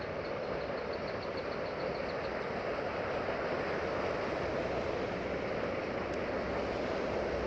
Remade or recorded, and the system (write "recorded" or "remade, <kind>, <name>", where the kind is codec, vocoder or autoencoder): recorded